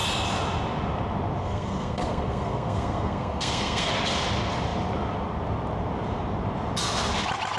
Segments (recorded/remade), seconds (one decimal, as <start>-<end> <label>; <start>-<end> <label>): 0.0-1.4 recorded; 1.4-3.9 remade; 3.9-7.6 recorded